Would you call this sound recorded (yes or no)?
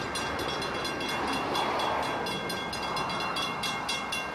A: yes